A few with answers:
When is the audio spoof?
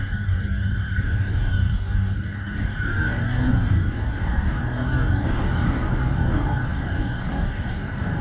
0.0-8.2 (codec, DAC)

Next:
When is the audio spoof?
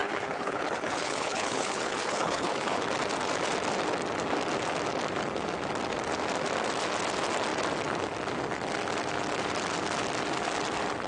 0.0-2.8 (codec, HILCodec)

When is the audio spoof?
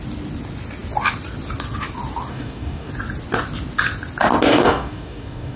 2.3-2.9 (codec, DAC); 4.5-5.6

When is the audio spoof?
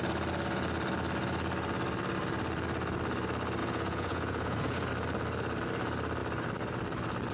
3.6-4.9 (vocoder, Vocos)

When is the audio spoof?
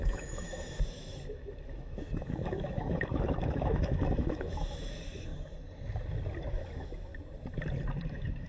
0.0-5.3 (autoencoder, DAC-VAE); 6.5-7.1; 8.1-8.5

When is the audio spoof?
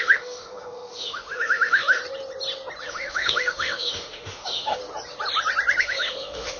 0.0-2.0 (autoencoder, DAC-VAE); 2.9-4.8; 5.8-6.6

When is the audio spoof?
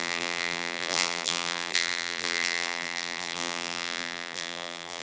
0.0-5.0 (vocoder, BigVGAN v2)